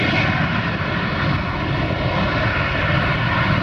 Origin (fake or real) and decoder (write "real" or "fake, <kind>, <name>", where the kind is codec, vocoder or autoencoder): real